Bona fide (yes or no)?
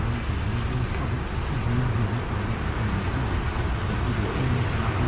yes